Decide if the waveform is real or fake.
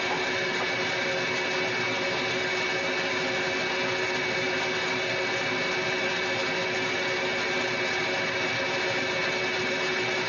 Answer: real